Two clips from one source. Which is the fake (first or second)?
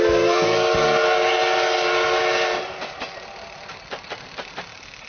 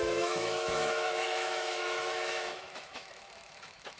second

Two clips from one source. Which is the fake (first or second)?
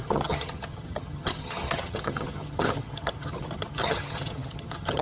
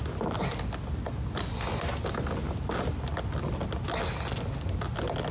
first